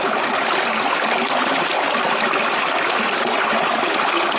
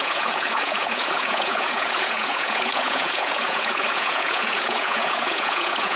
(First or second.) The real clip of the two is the first